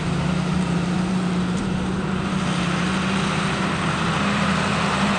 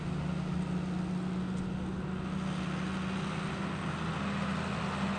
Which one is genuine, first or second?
second